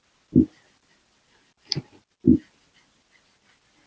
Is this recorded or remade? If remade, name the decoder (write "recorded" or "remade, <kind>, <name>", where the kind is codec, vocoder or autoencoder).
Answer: recorded